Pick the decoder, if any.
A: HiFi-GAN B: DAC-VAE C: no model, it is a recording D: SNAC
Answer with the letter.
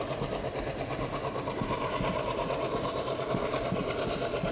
C